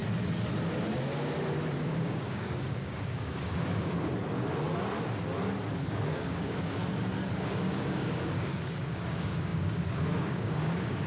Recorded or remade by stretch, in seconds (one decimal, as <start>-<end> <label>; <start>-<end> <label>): 0.0-1.8 recorded; 1.8-4.1 remade; 4.1-5.9 recorded; 5.9-6.8 remade; 6.8-7.3 recorded; 7.3-11.1 remade